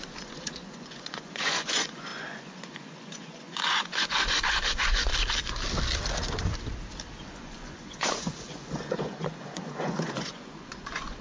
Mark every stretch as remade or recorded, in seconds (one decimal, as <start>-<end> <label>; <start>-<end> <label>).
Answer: 0.0-5.1 remade; 5.1-7.2 recorded; 7.2-11.2 remade